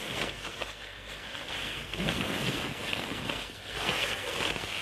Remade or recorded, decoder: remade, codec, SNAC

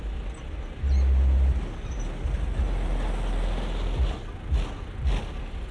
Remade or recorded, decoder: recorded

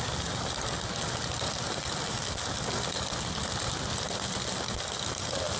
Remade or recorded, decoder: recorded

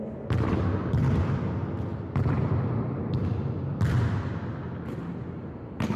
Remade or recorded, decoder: recorded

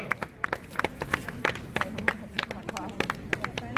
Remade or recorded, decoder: recorded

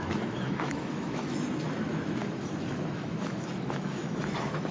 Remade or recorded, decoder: remade, autoencoder, DAC-VAE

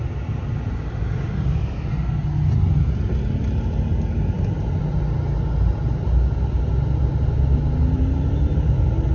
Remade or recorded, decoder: recorded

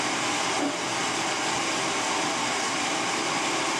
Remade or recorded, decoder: recorded